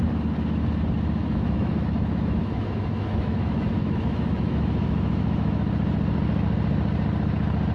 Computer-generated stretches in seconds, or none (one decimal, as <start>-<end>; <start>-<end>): 1.2-5.7